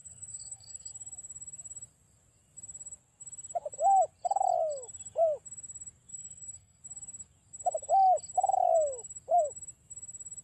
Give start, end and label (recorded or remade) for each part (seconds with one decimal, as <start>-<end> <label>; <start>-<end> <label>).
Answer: 0.0-0.9 remade; 0.9-6.1 recorded; 6.1-6.8 remade; 6.8-10.4 recorded